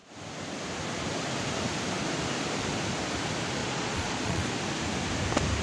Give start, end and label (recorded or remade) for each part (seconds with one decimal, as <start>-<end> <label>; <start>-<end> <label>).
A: 0.0-3.6 recorded; 3.6-4.5 remade; 4.5-5.6 recorded